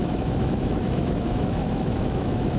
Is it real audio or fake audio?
fake